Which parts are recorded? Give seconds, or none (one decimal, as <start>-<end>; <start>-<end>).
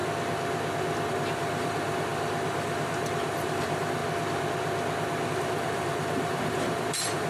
0.0-1.1; 4.0-5.3